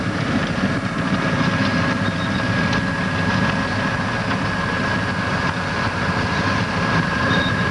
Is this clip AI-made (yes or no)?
no